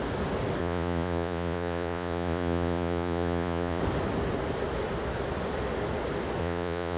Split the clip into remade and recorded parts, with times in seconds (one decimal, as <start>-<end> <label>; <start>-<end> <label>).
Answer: 0.0-0.6 recorded; 0.6-3.8 remade; 3.8-6.4 recorded; 6.4-7.0 remade